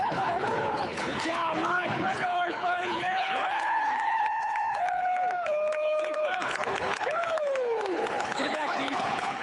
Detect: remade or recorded remade